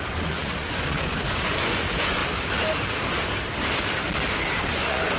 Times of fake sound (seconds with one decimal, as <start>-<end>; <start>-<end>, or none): 0.0-2.2; 4.6-5.2

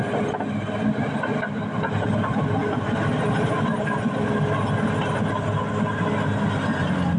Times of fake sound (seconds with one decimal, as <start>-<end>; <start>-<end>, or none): none

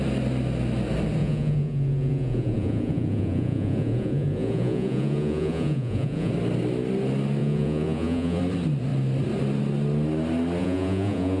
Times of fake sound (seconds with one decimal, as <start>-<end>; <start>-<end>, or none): 1.2-6.3; 7.4-8.4; 10.6-11.4

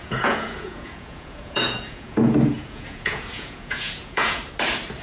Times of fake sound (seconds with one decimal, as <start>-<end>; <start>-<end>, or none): 0.0-4.4

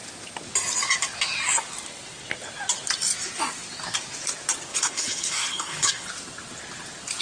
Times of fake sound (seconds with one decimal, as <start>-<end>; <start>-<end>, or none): 4.7-6.1

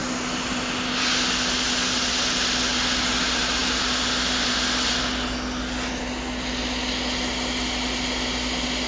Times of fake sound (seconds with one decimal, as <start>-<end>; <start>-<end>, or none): none